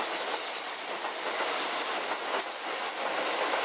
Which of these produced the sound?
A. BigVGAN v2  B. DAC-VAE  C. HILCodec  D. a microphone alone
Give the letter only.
D